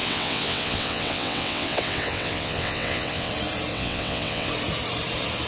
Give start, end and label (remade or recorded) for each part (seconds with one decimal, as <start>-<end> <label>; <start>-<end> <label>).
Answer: 0.0-3.3 remade; 3.3-3.7 recorded; 3.7-4.5 remade; 4.5-5.5 recorded